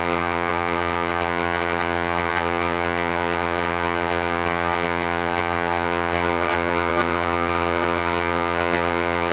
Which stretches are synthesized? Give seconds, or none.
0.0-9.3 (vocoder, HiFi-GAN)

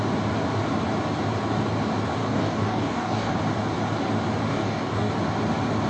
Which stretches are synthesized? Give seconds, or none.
2.2-3.4 (codec, DAC); 4.5-5.1

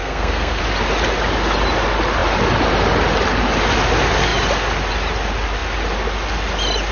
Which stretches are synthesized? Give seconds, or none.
0.0-0.6 (codec, SNAC)

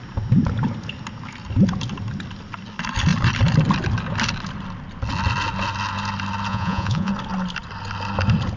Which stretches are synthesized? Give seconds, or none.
6.5-7.1 (vocoder, Vocos)

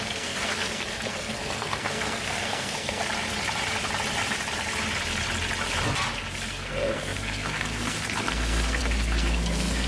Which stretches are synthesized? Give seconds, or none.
0.0-3.0 (codec, SNAC); 6.5-9.9

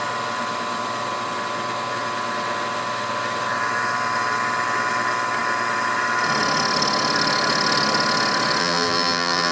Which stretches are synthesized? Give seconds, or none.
8.6-9.5 (vocoder, BigVGAN v2)

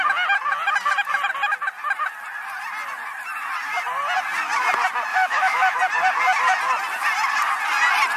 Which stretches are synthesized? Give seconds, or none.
5.1-5.8 (autoencoder, DAC-VAE)